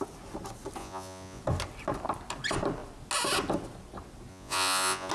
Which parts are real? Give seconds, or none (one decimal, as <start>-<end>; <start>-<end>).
0.0-0.8; 1.4-4.3